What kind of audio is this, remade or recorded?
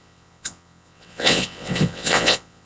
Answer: remade